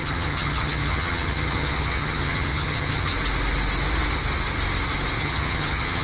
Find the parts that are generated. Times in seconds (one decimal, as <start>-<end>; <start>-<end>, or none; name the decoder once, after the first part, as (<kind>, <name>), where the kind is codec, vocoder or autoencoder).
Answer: 0.0-3.1 (vocoder, HiFi-GAN); 5.2-6.0